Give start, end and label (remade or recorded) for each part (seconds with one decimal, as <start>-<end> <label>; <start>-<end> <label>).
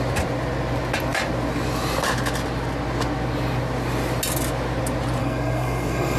0.0-5.2 recorded; 5.2-6.2 remade